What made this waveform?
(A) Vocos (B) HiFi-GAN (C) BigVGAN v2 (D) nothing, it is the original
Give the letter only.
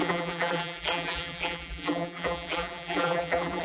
C